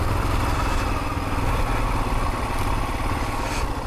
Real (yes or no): yes